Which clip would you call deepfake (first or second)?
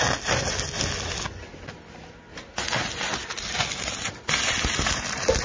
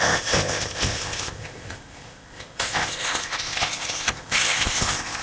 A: second